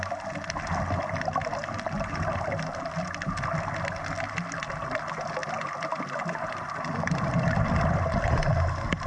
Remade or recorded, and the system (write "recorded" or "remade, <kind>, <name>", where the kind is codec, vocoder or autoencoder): recorded